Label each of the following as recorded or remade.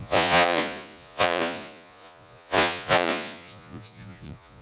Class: remade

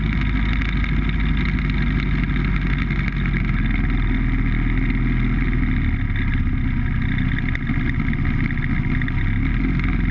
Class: recorded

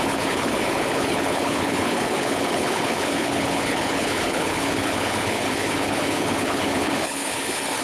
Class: remade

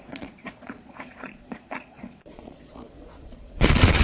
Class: remade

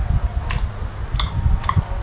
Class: recorded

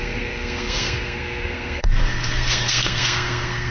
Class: remade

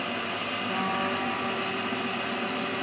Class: recorded